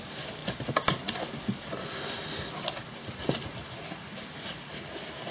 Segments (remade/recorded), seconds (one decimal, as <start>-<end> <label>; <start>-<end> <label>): 0.0-5.3 recorded